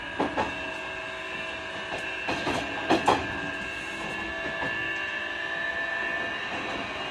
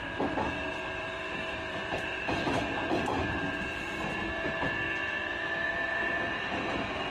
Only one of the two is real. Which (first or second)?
first